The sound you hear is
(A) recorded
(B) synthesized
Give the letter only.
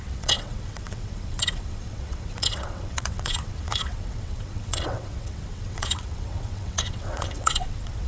B